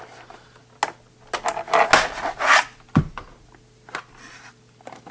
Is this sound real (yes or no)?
yes